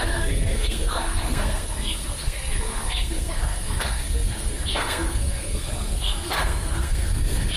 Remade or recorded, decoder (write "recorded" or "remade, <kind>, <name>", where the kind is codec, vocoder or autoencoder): remade, codec, SNAC